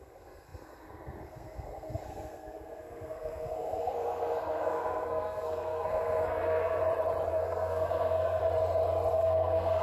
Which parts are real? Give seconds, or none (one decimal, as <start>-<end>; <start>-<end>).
6.8-7.3; 8.4-9.1